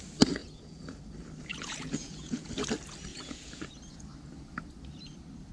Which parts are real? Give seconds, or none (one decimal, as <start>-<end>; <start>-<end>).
0.0-0.4; 1.0-1.5; 2.5-3.1; 3.7-5.5